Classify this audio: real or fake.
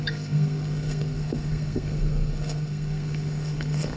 fake